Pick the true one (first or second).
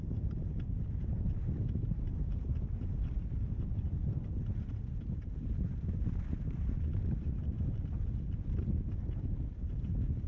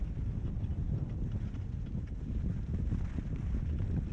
second